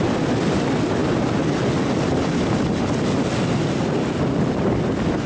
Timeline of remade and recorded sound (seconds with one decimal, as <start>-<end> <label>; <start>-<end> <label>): 0.0-5.3 recorded